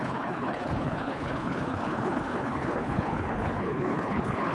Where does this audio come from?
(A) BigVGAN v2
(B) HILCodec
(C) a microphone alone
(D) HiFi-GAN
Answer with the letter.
B